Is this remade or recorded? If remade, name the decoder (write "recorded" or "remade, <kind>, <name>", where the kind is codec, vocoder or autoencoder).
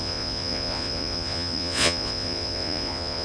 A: remade, vocoder, Vocos